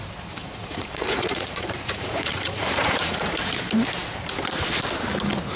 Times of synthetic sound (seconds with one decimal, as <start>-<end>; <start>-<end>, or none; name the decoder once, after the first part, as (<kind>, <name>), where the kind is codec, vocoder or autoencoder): 0.4-3.4 (vocoder, Vocos)